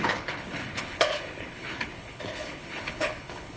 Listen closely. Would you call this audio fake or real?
fake